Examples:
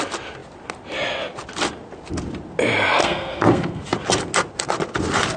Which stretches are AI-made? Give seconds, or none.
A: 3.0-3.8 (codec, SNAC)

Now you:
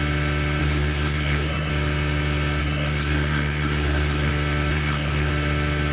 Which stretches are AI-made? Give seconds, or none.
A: 0.6-1.7 (codec, SNAC); 2.6-4.3; 4.7-5.3